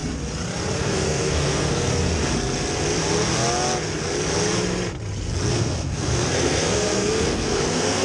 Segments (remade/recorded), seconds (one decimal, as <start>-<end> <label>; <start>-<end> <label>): 0.0-0.8 recorded; 0.8-1.9 remade; 1.9-5.5 recorded; 5.5-8.0 remade